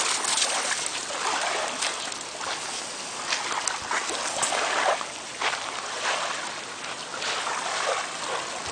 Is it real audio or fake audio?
real